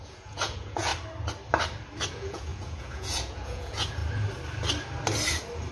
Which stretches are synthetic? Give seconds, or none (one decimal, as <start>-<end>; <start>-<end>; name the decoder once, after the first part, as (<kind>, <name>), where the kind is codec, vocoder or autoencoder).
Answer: 0.0-0.9 (vocoder, Vocos); 2.1-4.0